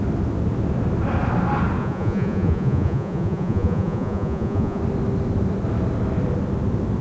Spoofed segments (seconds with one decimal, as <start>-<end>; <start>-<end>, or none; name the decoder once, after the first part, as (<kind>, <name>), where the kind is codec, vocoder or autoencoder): 1.8-4.8 (vocoder, Vocos)